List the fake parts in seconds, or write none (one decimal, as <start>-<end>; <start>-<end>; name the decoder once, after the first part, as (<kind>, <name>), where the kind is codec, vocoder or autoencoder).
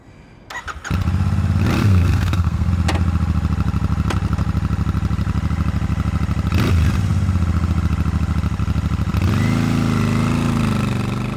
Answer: 1.8-2.7 (codec, SNAC)